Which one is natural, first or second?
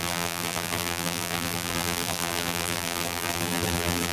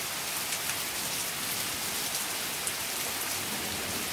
second